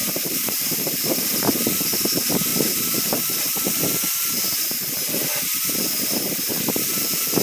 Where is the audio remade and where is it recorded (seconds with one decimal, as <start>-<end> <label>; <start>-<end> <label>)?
0.0-1.2 remade; 1.2-2.5 recorded; 2.5-4.3 remade; 4.3-7.4 recorded